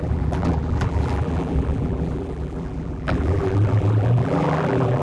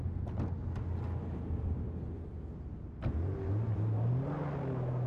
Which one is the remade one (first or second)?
first